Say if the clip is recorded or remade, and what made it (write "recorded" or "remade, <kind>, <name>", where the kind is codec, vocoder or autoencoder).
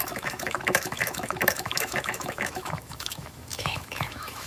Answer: remade, autoencoder, DAC-VAE